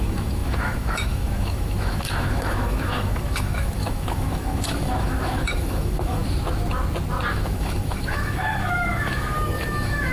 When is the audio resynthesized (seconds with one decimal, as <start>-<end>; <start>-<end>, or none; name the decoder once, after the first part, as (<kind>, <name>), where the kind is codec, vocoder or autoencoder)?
0.0-6.2 (autoencoder, DAC-VAE); 7.3-10.1